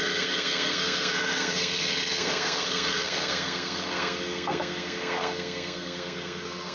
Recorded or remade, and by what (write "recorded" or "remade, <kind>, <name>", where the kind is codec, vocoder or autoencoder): remade, codec, SNAC